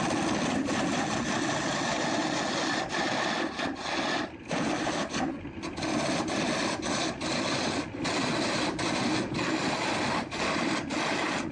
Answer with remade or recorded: recorded